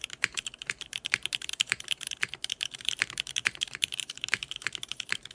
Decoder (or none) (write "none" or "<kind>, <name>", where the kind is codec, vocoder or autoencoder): vocoder, BigVGAN v2